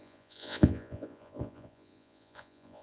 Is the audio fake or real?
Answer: fake